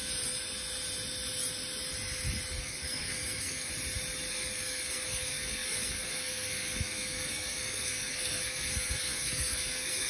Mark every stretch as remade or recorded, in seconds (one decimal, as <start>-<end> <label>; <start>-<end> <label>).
0.0-2.6 recorded; 2.6-3.7 remade; 3.7-4.3 recorded; 4.3-10.1 remade